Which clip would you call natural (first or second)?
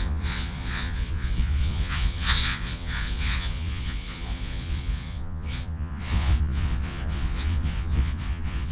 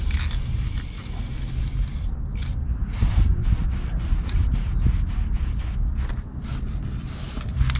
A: second